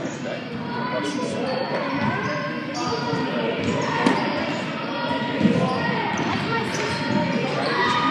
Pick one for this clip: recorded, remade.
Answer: recorded